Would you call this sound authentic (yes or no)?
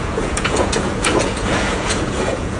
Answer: no